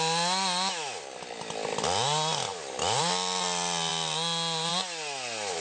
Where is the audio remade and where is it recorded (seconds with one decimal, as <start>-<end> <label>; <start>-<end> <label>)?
0.0-5.6 recorded

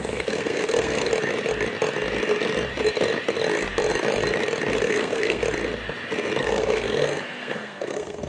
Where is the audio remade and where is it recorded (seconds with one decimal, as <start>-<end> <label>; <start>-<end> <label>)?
0.0-1.1 remade; 1.1-4.8 recorded; 4.8-5.4 remade; 5.4-6.4 recorded; 6.4-8.3 remade

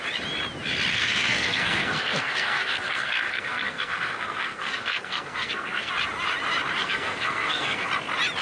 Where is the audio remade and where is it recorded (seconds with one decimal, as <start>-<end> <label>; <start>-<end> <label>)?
0.0-0.9 recorded; 0.9-5.9 remade; 5.9-6.8 recorded; 6.8-7.9 remade; 7.9-8.4 recorded